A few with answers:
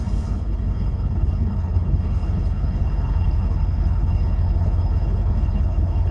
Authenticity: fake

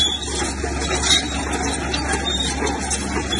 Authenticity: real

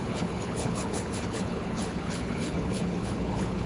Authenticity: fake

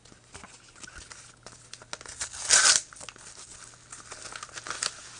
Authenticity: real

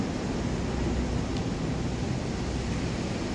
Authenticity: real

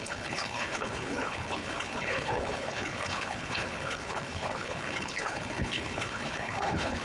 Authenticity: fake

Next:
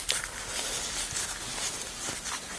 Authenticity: real